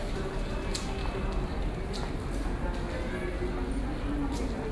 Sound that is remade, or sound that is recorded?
recorded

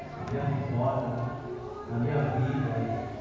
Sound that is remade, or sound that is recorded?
recorded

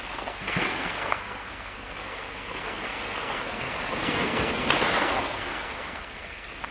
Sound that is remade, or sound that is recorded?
remade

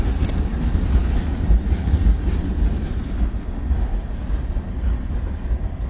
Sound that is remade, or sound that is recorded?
recorded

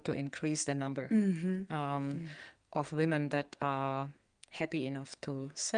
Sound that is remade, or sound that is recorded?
remade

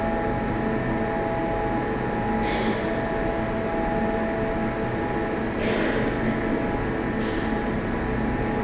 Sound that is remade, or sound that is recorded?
recorded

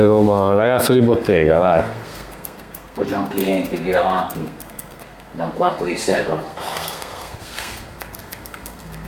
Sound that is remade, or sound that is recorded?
remade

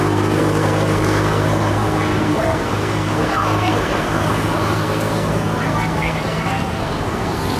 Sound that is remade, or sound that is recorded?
remade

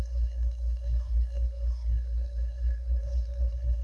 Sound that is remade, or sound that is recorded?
remade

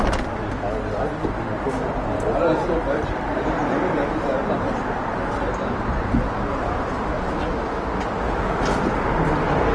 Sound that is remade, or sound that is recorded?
recorded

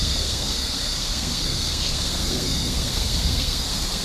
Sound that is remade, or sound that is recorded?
remade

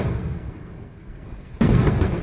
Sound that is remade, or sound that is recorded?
remade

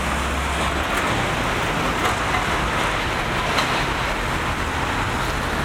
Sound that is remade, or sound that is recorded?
recorded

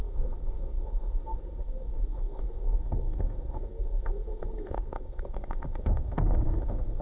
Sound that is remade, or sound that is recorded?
remade